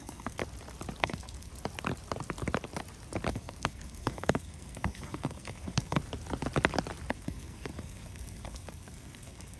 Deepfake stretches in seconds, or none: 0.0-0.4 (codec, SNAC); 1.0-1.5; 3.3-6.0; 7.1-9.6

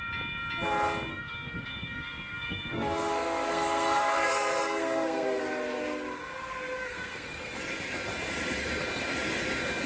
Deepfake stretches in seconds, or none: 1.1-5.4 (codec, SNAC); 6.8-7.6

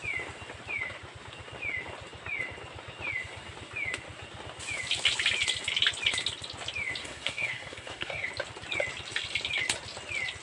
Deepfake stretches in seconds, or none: 7.0-8.3 (codec, SNAC)

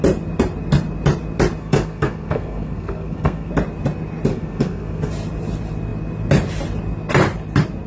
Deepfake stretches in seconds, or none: 1.6-3.5 (codec, SNAC); 4.3-5.1

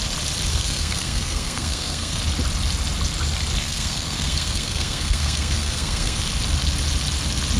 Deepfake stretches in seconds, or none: 0.5-2.2 (codec, SNAC); 3.6-6.2

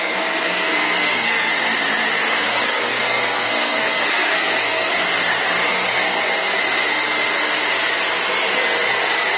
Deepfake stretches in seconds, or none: 0.0-1.5 (codec, SNAC); 2.2-4.9; 5.7-6.6; 8.8-9.4

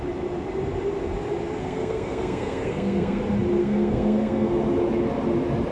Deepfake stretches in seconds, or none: 1.6-3.2 (codec, SNAC); 3.6-4.5

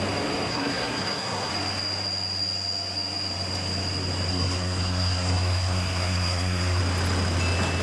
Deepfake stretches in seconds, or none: 0.5-1.5 (codec, SNAC); 4.3-6.8